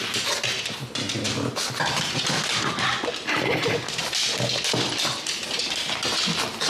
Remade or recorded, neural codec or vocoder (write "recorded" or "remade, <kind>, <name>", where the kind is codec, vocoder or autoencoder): recorded